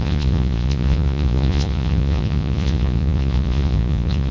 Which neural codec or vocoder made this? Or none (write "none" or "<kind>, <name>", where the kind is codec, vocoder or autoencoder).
vocoder, Vocos